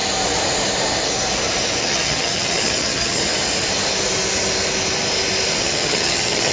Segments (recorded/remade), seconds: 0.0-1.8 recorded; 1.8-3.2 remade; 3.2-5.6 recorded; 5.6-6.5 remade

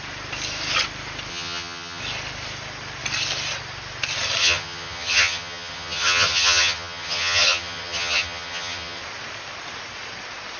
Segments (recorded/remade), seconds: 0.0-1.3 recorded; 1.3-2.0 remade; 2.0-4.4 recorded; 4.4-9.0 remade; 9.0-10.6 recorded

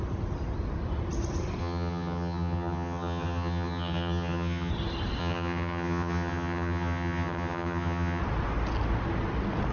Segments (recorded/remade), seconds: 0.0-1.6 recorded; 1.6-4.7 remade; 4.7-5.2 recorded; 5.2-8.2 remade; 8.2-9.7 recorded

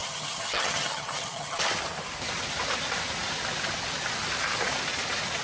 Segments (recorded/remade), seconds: 0.0-1.6 remade; 1.6-5.4 recorded

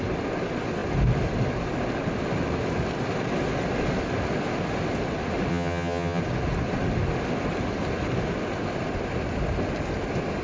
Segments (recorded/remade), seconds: 0.0-5.5 recorded; 5.5-6.2 remade; 6.2-10.4 recorded

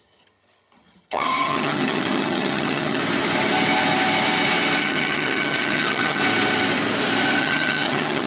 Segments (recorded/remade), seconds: 0.0-3.0 remade; 3.0-4.8 recorded; 4.8-6.2 remade; 6.2-7.4 recorded; 7.4-8.3 remade

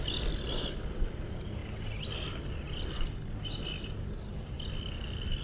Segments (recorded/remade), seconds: 0.0-5.4 recorded

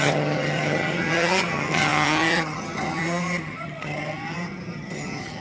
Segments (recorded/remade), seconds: 0.0-5.4 remade